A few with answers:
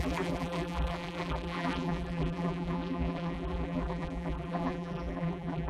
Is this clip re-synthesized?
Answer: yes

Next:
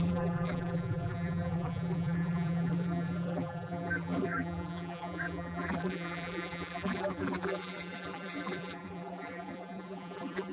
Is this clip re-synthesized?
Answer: yes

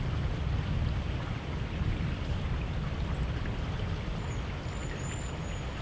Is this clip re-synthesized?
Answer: no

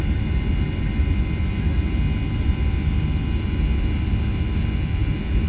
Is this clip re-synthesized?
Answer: no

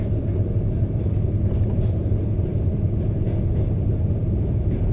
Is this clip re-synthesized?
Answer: no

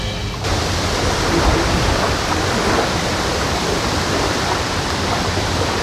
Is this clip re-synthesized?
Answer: no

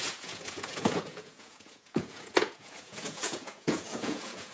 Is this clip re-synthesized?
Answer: yes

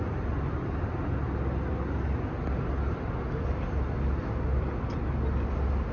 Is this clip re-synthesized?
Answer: no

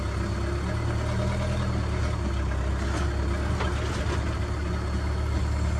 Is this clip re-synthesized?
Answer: no